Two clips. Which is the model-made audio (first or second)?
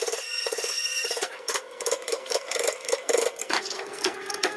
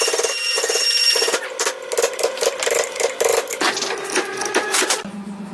first